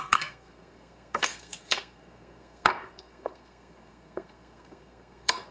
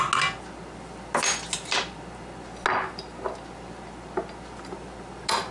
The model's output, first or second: first